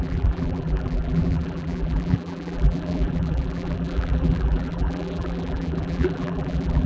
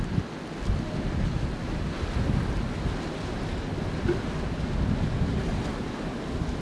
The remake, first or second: first